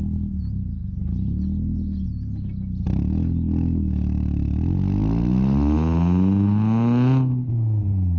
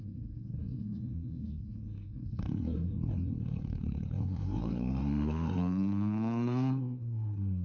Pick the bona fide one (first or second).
first